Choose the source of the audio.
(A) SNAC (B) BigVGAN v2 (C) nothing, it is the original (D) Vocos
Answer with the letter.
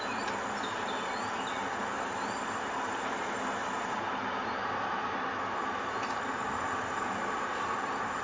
B